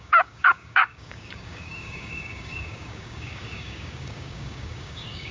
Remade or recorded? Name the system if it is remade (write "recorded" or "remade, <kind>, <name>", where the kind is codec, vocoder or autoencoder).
remade, codec, DAC